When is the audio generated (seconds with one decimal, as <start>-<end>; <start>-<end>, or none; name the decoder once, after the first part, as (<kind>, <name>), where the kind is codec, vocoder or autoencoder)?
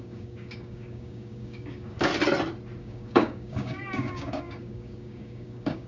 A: 0.0-2.1 (codec, DAC); 2.8-5.9